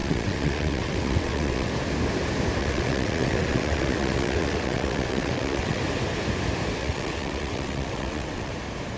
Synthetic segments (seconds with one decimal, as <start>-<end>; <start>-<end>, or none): 0.0-1.7; 2.6-5.8; 6.8-8.5